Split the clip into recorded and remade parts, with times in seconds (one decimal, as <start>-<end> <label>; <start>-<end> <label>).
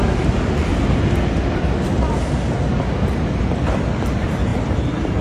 0.0-0.7 remade; 0.7-3.4 recorded; 3.4-4.5 remade; 4.5-5.2 recorded